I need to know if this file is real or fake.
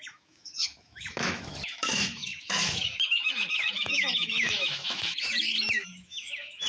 fake